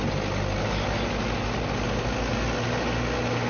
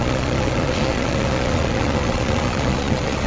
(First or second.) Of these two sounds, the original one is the first